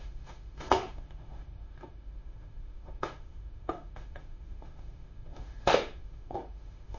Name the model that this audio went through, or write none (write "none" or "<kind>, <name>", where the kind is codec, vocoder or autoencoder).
autoencoder, DAC-VAE